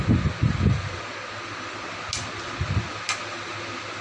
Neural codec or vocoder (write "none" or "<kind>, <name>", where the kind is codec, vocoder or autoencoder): none